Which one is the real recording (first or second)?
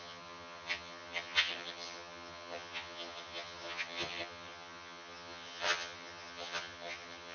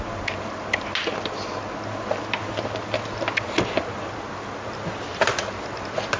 second